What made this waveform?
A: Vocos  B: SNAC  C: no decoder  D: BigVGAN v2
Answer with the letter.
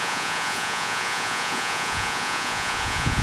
A